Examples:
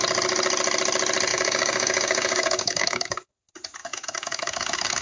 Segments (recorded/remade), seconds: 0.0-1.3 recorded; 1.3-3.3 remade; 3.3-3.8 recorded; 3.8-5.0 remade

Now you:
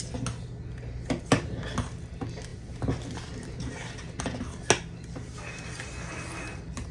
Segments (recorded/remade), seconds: 0.0-6.9 recorded

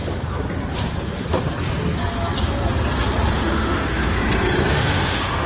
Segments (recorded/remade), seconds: 0.0-3.3 recorded; 3.3-4.2 remade; 4.2-4.7 recorded; 4.7-5.5 remade

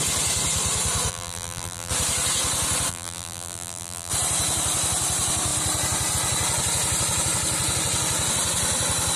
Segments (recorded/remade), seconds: 0.0-1.1 recorded; 1.1-1.9 remade; 1.9-2.9 recorded; 2.9-4.1 remade; 4.1-9.2 recorded